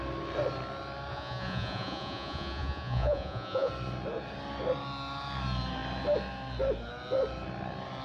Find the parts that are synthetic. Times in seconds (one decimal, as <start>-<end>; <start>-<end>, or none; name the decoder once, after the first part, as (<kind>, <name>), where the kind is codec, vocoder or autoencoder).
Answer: 1.1-3.7 (vocoder, Vocos)